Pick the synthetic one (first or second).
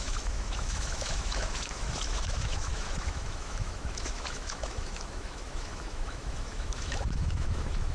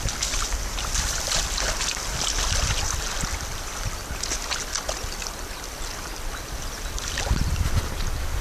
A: first